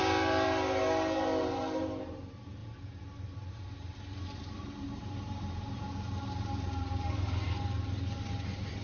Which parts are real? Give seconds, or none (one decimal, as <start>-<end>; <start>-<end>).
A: 0.0-1.4